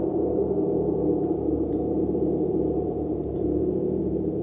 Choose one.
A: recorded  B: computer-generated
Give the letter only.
B